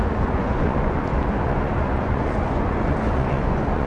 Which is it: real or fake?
fake